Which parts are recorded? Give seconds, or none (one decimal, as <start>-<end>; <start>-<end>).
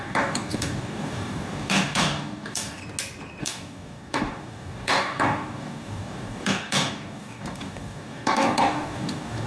2.8-3.4